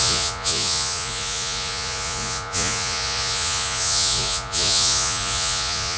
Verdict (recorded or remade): remade